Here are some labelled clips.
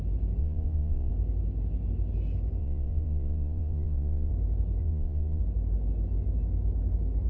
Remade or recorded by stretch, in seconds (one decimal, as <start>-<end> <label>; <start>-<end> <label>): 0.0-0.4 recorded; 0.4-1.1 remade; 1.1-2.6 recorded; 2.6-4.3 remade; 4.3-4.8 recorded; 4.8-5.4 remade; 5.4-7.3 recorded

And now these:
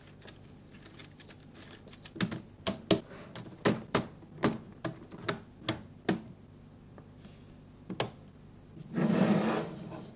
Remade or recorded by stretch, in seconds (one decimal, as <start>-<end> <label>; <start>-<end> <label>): 0.0-10.2 recorded

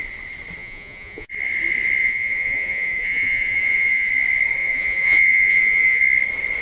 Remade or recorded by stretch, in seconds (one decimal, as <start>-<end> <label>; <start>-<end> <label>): 0.0-0.6 recorded; 0.6-1.3 remade; 1.3-2.0 recorded; 2.0-4.1 remade; 4.1-4.6 recorded; 4.6-6.0 remade; 6.0-6.6 recorded